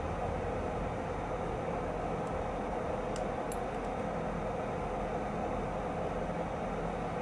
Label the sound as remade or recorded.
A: recorded